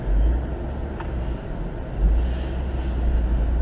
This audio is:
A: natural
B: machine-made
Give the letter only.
A